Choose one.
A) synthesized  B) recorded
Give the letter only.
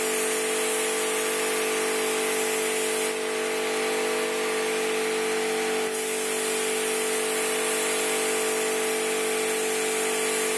B